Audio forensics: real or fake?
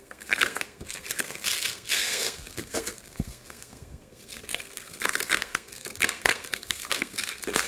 fake